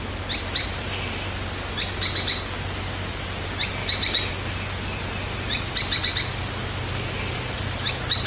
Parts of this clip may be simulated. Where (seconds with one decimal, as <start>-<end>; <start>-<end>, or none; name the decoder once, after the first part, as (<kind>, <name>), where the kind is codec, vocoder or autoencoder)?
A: 3.8-4.3 (vocoder, BigVGAN v2)